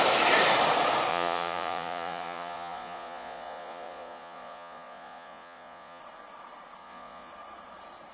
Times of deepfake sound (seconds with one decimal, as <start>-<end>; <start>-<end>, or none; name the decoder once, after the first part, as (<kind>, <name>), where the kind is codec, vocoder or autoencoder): 1.1-6.0 (vocoder, Vocos); 6.8-7.3